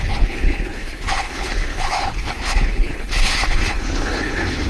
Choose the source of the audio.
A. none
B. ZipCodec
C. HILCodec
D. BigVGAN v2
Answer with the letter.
C